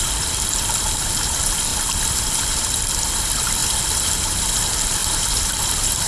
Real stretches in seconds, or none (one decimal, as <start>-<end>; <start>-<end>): 0.0-1.7; 2.9-3.6; 4.6-5.0